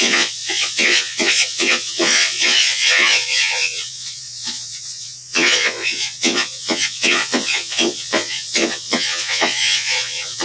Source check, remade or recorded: remade